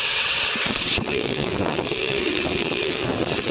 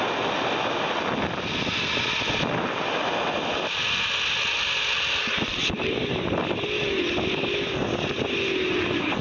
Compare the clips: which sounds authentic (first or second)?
second